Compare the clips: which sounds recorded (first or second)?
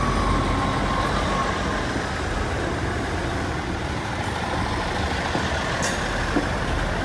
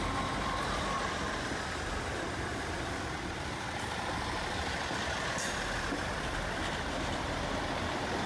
first